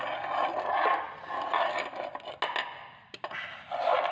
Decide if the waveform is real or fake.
real